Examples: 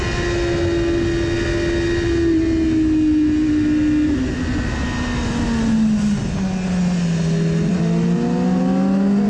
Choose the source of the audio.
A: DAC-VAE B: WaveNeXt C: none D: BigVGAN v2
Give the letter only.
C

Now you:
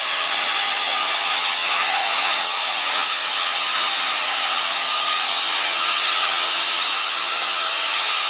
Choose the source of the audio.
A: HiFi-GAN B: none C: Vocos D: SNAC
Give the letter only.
A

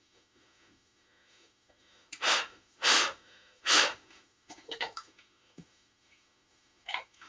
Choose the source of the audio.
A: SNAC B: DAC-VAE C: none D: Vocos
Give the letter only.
B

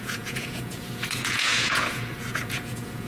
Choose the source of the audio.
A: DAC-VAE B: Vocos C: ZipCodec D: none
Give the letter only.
B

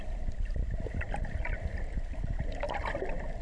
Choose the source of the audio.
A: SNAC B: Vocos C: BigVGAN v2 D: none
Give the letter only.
D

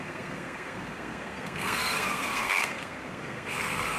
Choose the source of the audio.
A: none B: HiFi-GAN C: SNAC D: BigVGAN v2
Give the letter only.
C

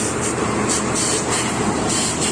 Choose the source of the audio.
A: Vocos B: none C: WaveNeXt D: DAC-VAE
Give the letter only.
B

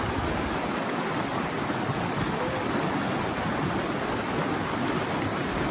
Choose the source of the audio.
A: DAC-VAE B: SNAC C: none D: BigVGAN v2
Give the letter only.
C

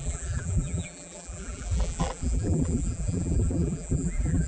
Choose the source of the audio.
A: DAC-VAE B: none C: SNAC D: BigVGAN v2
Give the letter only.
D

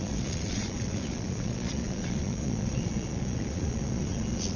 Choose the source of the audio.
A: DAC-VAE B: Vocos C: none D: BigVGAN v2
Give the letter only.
B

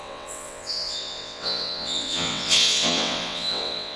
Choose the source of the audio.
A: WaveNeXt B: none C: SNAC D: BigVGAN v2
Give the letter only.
A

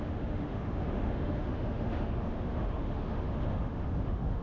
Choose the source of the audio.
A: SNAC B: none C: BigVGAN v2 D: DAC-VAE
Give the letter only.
D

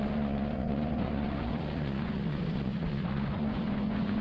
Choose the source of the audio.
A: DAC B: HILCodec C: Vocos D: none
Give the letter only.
C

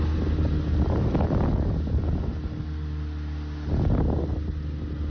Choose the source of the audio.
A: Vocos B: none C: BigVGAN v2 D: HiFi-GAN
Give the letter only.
B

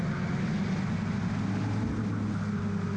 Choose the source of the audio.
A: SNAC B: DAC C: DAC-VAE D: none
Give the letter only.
D